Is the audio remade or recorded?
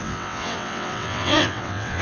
remade